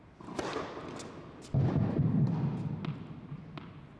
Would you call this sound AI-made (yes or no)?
no